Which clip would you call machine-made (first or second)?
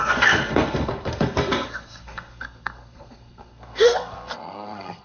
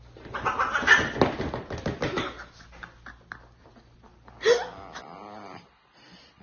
first